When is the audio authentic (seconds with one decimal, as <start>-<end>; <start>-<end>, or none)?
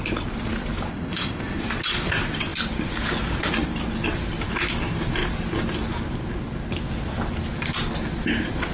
0.0-0.9; 1.6-8.7